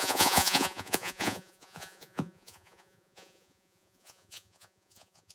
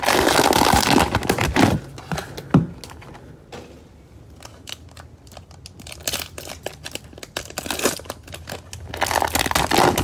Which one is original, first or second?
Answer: second